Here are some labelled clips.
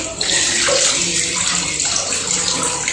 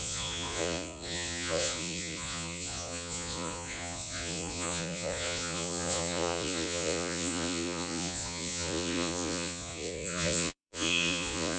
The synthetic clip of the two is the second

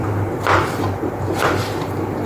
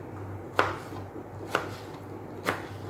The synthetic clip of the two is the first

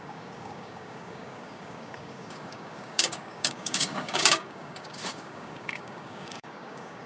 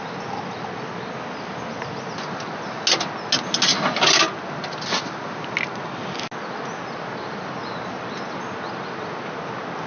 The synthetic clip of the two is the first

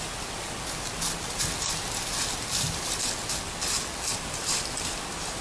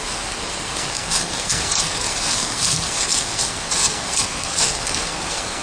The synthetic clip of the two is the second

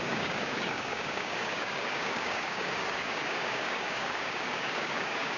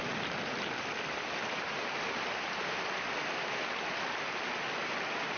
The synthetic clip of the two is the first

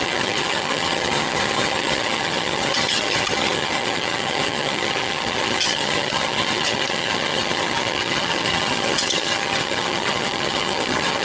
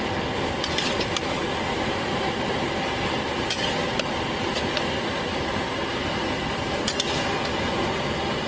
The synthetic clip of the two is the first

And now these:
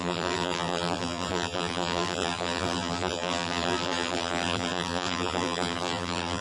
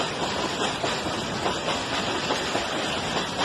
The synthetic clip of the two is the first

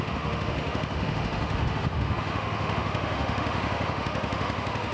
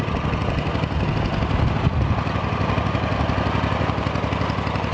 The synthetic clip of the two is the first